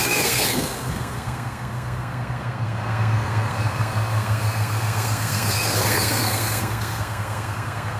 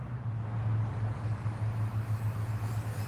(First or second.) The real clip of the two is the second